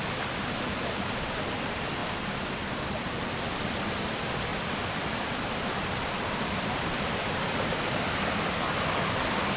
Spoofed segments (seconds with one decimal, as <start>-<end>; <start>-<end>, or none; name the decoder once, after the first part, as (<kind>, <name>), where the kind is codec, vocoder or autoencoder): 0.0-0.7 (vocoder, BigVGAN v2); 2.0-2.7; 4.5-8.0